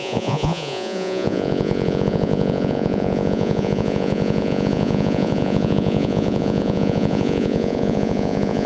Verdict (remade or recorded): remade